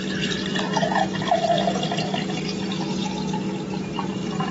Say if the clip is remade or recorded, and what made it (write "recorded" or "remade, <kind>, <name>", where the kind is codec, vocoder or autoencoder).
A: recorded